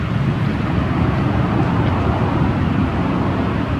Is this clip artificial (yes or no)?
no